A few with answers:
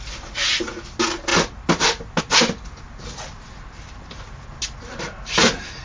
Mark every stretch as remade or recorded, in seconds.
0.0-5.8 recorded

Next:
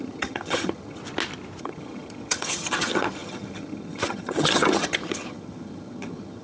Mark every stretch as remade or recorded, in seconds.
0.0-1.0 remade; 1.0-1.6 recorded; 1.6-6.4 remade

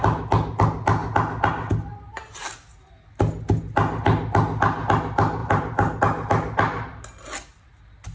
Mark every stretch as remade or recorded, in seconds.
0.0-5.4 recorded; 5.4-6.0 remade; 6.0-8.1 recorded

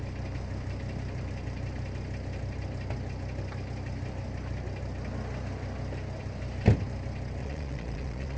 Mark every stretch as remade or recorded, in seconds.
0.0-7.4 recorded; 7.4-8.4 remade

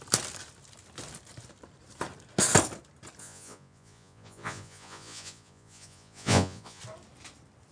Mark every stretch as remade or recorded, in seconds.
0.0-3.2 recorded; 3.2-6.8 remade; 6.8-7.7 recorded

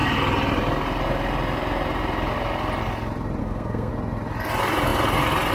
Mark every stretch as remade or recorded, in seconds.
0.0-3.4 recorded; 3.4-3.9 remade; 3.9-5.5 recorded

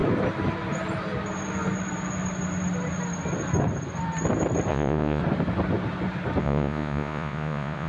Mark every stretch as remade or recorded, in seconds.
0.0-4.7 recorded; 4.7-5.2 remade; 5.2-6.4 recorded; 6.4-7.9 remade